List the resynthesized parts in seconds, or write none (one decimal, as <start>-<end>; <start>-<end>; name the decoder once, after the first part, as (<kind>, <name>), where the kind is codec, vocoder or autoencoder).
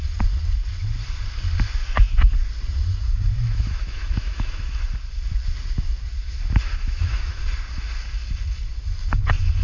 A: 3.3-4.7 (autoencoder, DAC-VAE); 6.7-7.4